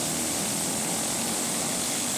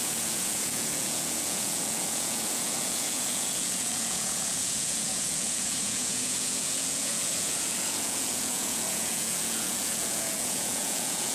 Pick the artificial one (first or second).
second